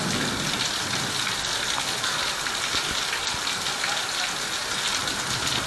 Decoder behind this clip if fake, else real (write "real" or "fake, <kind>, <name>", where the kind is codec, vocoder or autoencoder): real